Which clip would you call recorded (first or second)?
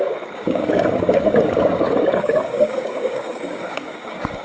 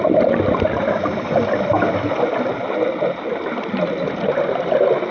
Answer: second